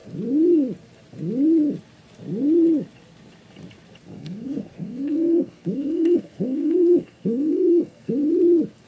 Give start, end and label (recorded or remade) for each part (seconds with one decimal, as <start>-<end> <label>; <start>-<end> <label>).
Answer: 0.0-4.1 recorded; 4.1-8.1 remade; 8.1-8.9 recorded